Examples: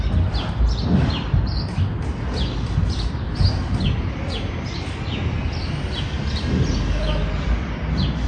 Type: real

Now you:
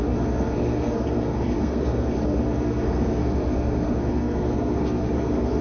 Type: fake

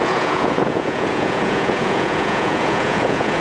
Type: fake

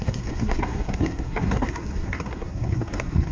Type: fake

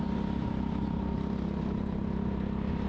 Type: real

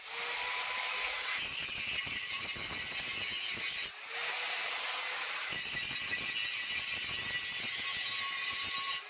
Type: real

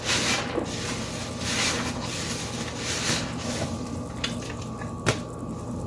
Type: real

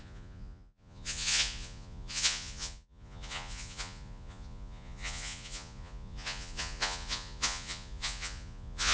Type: fake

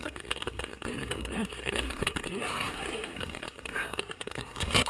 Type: fake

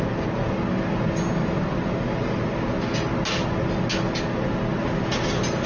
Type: real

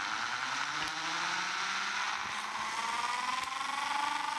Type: real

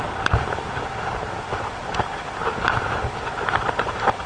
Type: real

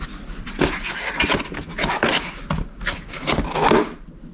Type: real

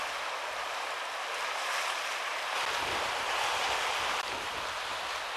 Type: real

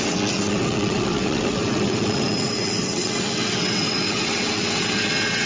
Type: fake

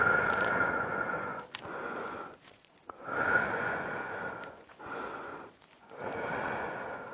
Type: fake